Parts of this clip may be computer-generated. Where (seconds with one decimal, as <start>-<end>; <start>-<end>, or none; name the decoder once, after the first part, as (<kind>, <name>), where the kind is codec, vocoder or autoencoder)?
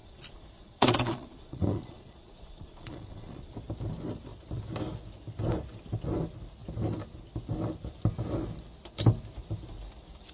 0.0-3.5 (vocoder, Vocos)